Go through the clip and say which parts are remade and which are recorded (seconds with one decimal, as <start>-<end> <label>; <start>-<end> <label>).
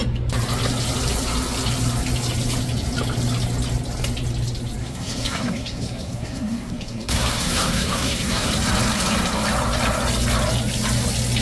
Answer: 0.0-4.8 recorded; 4.8-8.5 remade; 8.5-11.4 recorded